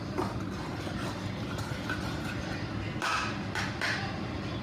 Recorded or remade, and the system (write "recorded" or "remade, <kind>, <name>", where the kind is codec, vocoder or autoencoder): recorded